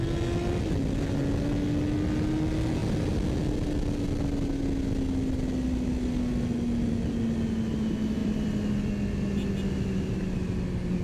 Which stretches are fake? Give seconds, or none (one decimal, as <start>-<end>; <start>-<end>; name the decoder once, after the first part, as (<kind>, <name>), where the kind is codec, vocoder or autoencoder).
8.2-8.9 (vocoder, BigVGAN v2)